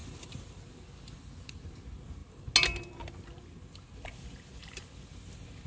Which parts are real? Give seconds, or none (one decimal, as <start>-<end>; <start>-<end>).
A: 0.0-5.7